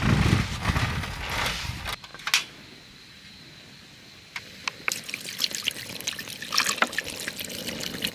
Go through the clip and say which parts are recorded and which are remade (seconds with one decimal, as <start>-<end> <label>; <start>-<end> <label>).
0.0-8.1 recorded